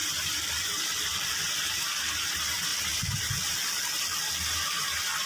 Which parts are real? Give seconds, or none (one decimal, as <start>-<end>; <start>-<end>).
2.7-3.3